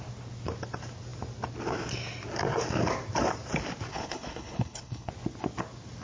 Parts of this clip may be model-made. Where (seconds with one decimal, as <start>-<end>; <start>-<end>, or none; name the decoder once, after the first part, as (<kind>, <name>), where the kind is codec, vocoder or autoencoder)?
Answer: 3.9-5.1 (codec, HILCodec)